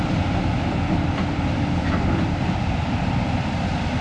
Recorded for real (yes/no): no